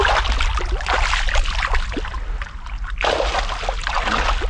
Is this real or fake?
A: real